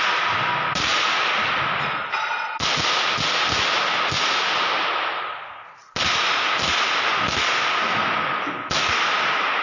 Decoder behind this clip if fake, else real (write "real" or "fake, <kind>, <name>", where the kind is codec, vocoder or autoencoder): real